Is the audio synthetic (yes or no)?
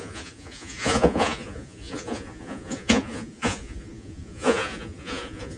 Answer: yes